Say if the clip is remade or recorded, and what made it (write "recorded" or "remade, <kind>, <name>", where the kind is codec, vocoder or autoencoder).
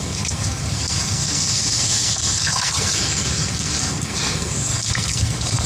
remade, codec, SNAC